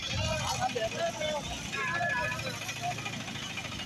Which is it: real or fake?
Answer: real